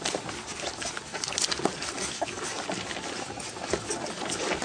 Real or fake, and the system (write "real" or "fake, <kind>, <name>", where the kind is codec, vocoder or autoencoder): real